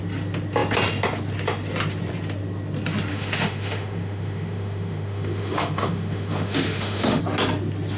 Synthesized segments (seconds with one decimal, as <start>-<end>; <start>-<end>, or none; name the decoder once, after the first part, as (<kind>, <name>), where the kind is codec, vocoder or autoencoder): 3.1-7.2 (autoencoder, DAC-VAE)